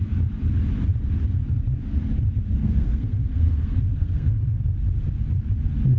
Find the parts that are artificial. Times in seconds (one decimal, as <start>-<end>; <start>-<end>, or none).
2.6-4.6